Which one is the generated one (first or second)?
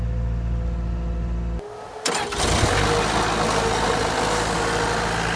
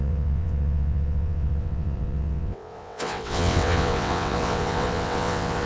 second